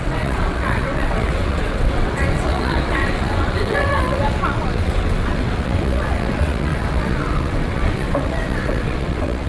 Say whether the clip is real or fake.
fake